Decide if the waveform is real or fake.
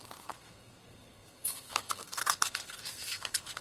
fake